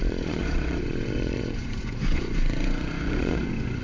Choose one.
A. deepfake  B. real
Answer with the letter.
A